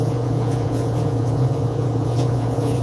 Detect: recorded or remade remade